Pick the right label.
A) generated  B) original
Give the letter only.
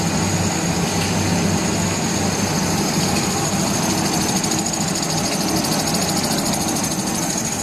B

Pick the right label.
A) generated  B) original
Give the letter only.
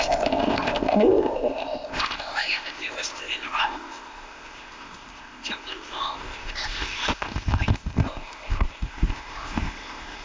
A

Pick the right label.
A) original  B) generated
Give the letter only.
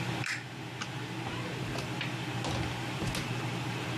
A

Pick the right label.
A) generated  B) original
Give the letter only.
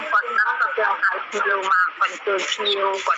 A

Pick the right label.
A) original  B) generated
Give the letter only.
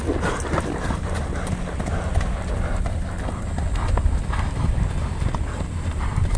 A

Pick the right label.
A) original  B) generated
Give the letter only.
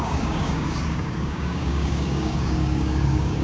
B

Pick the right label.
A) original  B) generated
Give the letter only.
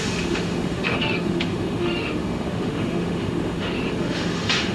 B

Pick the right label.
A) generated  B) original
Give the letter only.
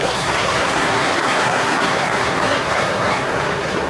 A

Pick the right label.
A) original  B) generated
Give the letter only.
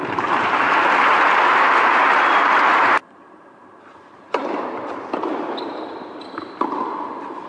B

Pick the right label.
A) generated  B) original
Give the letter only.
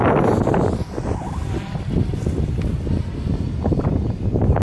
B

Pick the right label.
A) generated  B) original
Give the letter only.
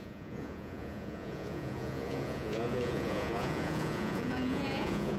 A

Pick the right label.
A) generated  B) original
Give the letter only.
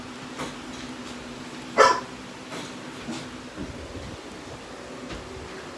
B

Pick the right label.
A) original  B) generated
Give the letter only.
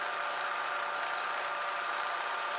A